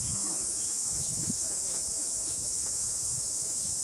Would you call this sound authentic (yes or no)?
no